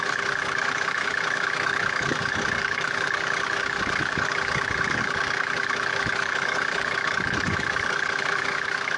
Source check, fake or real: fake